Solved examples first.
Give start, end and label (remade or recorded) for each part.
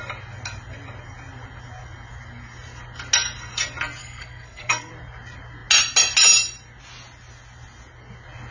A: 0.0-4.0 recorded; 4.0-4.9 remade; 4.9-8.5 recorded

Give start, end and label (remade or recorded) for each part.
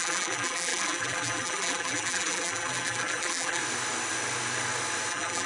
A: 0.0-3.6 remade; 3.6-5.1 recorded; 5.1-5.5 remade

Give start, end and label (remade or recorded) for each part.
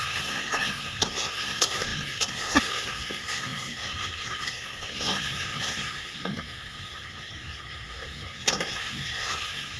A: 0.0-9.8 remade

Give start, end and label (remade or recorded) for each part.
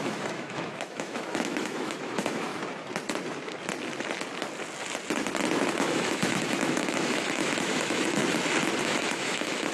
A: 0.0-2.5 remade; 2.5-5.7 recorded; 5.7-8.2 remade; 8.2-8.8 recorded; 8.8-9.7 remade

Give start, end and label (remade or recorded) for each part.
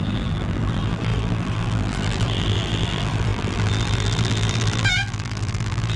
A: 0.0-6.0 remade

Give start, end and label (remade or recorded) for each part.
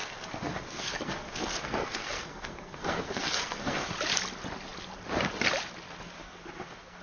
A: 0.0-3.9 remade; 3.9-6.2 recorded; 6.2-7.0 remade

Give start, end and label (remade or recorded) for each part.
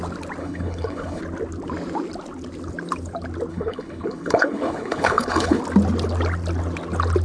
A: 0.0-0.4 recorded; 0.4-1.2 remade; 1.2-3.5 recorded; 3.5-5.6 remade; 5.6-7.2 recorded